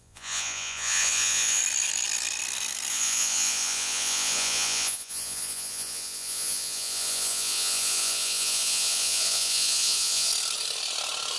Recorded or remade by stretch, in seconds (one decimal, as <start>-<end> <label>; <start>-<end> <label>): 0.0-1.6 remade; 1.6-2.9 recorded; 2.9-10.3 remade; 10.3-11.4 recorded